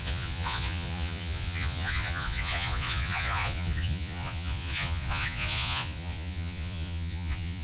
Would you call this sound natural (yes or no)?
no